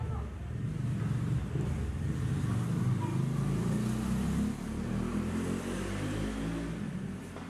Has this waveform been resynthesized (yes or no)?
no